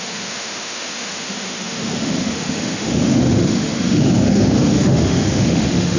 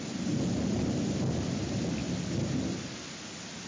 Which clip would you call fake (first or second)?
first